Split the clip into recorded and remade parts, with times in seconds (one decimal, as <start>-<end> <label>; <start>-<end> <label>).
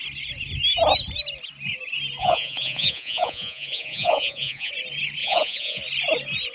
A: 0.0-2.2 recorded; 2.2-4.7 remade; 4.7-5.2 recorded; 5.2-5.8 remade; 5.8-6.5 recorded